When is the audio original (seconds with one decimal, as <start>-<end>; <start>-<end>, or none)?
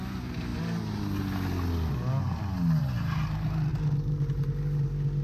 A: 0.0-5.2